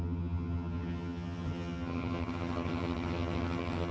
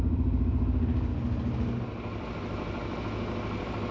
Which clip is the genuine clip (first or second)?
second